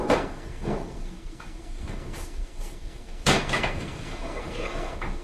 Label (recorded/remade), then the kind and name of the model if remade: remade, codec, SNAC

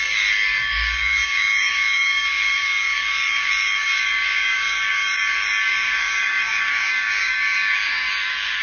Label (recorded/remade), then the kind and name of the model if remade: remade, codec, DAC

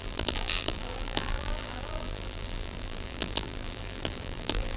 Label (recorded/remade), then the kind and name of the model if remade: remade, vocoder, BigVGAN v2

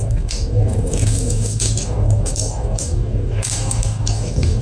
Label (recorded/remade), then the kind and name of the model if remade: remade, codec, DAC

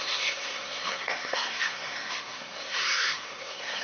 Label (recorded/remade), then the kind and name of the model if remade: remade, codec, SNAC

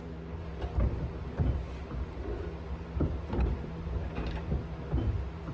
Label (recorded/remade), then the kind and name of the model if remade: recorded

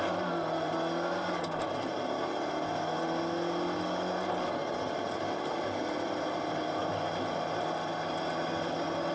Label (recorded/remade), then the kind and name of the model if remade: recorded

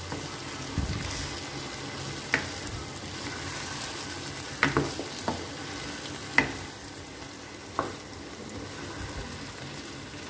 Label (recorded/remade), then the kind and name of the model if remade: recorded